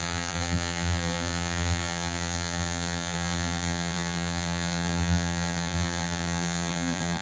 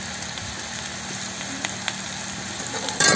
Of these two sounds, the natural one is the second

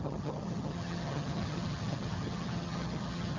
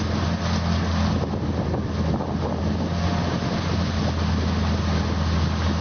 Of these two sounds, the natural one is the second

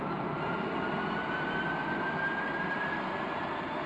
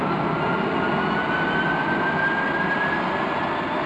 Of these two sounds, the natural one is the second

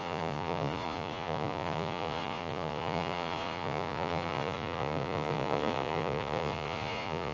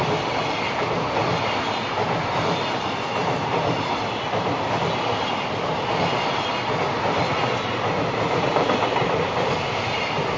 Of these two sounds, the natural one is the second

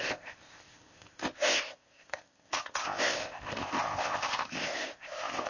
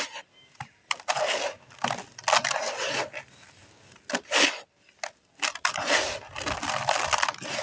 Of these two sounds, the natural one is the second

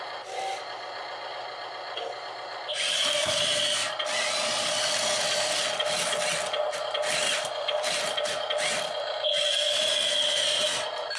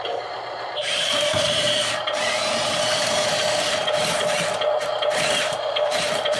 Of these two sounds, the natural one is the first